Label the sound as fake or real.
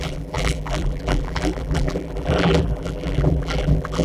fake